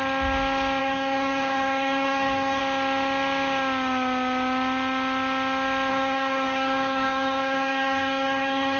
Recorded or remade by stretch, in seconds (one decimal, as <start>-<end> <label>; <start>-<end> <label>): 0.0-0.8 recorded; 0.8-2.6 remade; 2.6-5.9 recorded; 5.9-8.8 remade